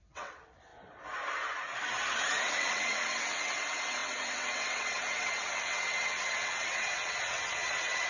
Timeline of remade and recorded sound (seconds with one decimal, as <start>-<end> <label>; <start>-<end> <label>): 0.0-0.7 remade; 0.7-2.4 recorded; 2.4-8.1 remade